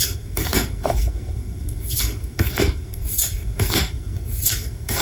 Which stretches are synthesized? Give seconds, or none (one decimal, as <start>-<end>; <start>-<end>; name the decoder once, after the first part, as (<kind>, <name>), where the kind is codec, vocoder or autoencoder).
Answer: 0.0-5.0 (codec, SNAC)